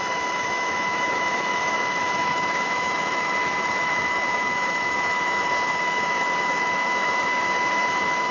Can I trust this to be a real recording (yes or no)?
no